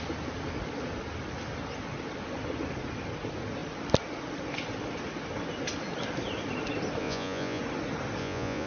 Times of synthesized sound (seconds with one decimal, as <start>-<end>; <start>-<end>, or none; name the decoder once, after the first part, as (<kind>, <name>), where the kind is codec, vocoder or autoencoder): 7.0-7.6 (vocoder, Vocos); 8.2-8.7